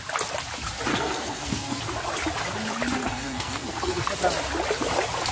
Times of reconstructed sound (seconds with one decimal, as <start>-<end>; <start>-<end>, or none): 0.9-1.8; 3.0-4.1